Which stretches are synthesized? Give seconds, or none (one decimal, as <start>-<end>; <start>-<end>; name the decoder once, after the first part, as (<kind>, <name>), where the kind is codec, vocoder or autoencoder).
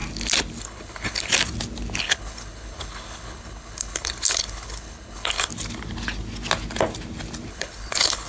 0.6-1.3 (codec, HILCodec); 2.0-5.5; 7.5-8.3